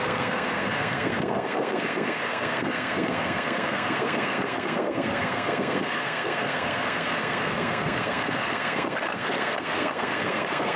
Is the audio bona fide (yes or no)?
no